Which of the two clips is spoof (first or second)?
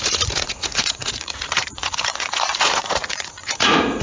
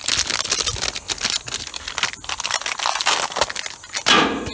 first